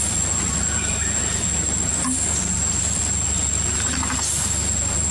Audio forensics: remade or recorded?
recorded